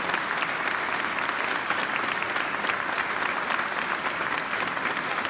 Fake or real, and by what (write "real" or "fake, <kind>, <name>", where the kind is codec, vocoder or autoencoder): real